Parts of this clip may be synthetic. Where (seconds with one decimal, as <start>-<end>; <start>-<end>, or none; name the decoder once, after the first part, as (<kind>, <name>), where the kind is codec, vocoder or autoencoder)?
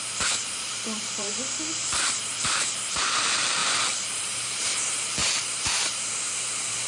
0.0-1.3 (vocoder, BigVGAN v2); 1.8-6.9